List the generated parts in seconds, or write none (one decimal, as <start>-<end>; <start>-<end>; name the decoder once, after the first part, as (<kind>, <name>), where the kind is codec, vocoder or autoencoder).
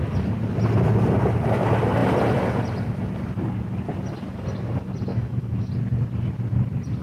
5.1-5.7 (autoencoder, DAC-VAE)